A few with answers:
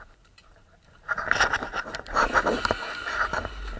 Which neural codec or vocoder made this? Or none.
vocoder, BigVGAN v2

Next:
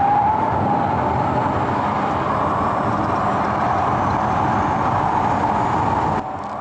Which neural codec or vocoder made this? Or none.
none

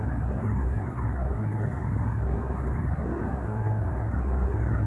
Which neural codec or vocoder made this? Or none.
codec, SNAC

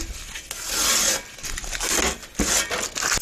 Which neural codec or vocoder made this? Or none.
none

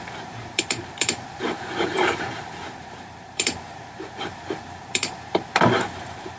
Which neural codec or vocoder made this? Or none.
vocoder, BigVGAN v2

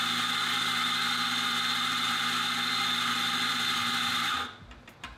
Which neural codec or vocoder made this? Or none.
none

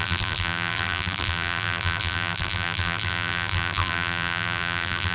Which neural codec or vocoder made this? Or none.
vocoder, BigVGAN v2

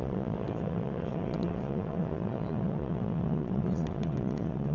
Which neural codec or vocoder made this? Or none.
vocoder, WaveNeXt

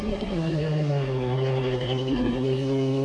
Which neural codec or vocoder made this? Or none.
codec, SNAC